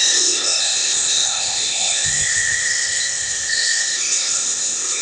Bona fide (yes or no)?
no